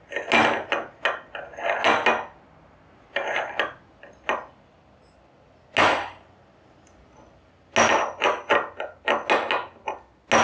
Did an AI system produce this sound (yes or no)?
no